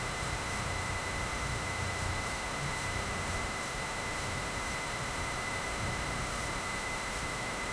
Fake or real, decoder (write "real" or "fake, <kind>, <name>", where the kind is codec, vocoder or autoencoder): fake, autoencoder, DAC-VAE